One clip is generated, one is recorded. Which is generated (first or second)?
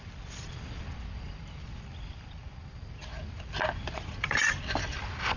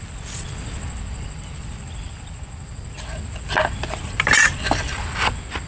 first